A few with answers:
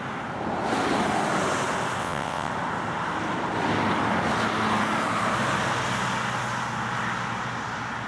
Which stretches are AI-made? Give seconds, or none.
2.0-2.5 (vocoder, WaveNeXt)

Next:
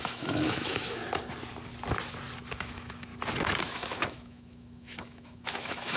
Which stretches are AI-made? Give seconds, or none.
0.0-1.0 (autoencoder, DAC-VAE); 2.5-3.1; 3.6-6.0

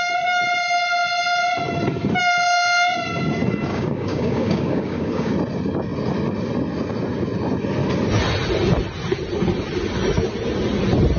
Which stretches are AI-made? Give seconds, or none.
3.7-5.3 (codec, DAC)

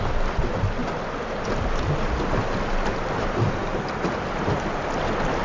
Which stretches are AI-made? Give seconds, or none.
none

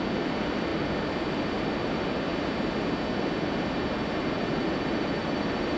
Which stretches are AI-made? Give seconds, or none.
none

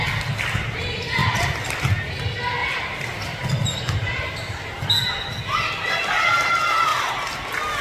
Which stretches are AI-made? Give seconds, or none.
1.2-2.1 (vocoder, BigVGAN v2); 2.6-4.9